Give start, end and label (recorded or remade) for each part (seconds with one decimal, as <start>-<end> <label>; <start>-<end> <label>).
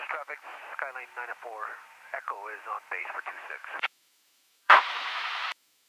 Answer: 0.0-0.6 remade; 0.6-3.0 recorded; 3.0-5.9 remade